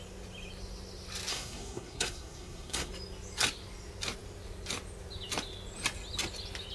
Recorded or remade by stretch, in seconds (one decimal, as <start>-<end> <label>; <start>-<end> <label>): 0.0-1.3 recorded; 1.3-2.9 remade; 2.9-6.7 recorded